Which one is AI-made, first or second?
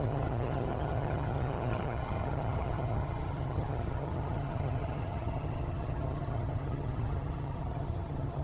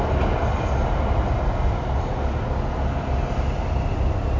first